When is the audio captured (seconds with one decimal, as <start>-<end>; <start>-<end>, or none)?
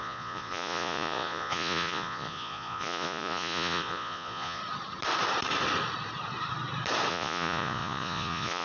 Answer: 4.6-7.1